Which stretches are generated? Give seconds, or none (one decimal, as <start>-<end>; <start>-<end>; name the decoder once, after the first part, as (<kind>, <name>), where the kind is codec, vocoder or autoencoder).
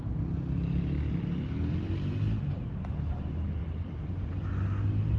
none